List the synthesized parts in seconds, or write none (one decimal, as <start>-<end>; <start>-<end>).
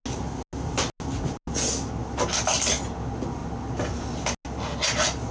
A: none